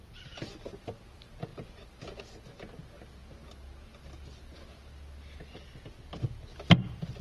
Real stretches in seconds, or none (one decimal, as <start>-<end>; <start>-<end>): 0.0-7.2

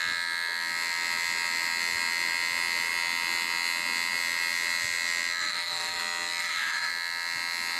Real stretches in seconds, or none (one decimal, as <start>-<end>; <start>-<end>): 0.0-5.4; 6.0-6.4; 6.9-7.8

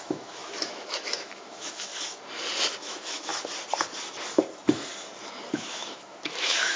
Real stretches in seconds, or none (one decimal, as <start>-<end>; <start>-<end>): 1.9-2.8; 3.3-5.5

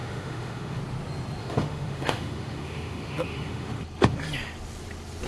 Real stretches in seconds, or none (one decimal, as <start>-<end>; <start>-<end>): 0.8-1.4; 3.8-5.3

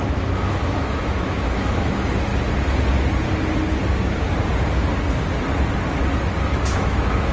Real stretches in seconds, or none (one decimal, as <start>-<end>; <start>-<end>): 2.3-6.7

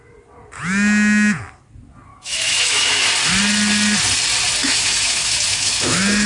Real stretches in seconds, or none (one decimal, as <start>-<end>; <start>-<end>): 0.0-2.1; 3.1-4.6